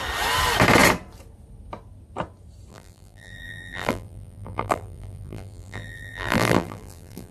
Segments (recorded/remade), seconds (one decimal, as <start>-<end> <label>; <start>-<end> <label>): 0.0-2.7 recorded; 2.7-7.3 remade